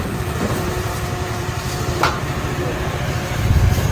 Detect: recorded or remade remade